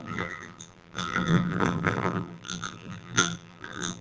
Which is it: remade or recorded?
remade